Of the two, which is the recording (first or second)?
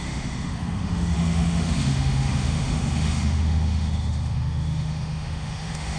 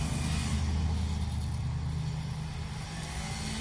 second